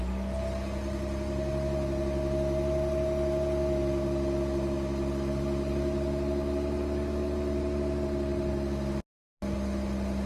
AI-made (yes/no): no